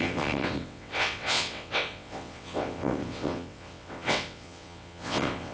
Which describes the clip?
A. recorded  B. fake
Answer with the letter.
B